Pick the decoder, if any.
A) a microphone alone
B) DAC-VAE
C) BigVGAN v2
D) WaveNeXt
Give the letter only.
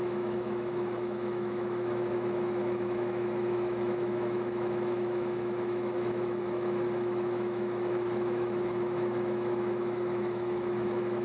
B